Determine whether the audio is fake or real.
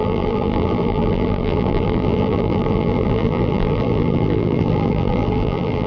fake